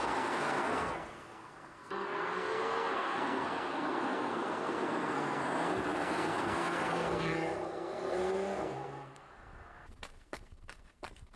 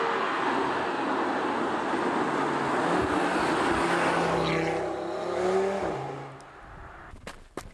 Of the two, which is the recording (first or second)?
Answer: second